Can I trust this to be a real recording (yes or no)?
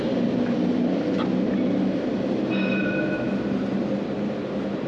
yes